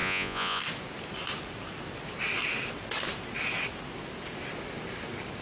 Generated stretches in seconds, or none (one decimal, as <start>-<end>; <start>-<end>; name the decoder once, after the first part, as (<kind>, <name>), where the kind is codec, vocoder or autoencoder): 0.0-0.6 (vocoder, Vocos)